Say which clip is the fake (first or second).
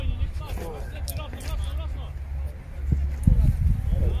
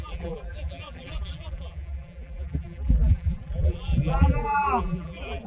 second